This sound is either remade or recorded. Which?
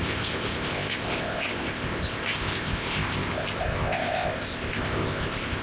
remade